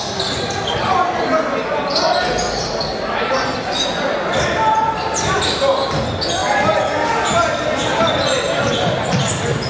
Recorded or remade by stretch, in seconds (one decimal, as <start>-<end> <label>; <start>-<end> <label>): 0.0-9.7 recorded